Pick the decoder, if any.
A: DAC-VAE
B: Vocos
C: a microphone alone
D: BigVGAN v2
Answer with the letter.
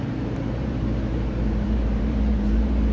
D